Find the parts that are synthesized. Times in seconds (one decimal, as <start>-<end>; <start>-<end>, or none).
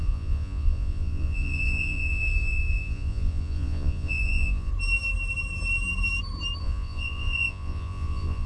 0.0-4.7; 6.6-8.5